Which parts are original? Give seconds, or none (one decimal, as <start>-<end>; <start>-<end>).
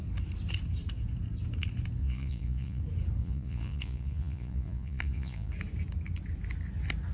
0.0-2.0; 2.8-3.2; 5.5-7.1